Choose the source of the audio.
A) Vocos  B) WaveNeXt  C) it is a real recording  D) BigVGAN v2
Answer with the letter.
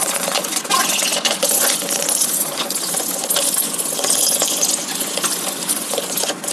A